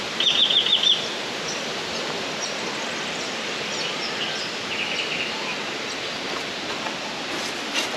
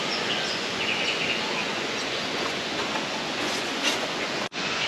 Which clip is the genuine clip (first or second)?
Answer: first